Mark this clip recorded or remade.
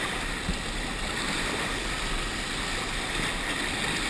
recorded